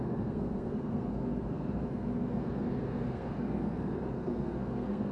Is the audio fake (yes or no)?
yes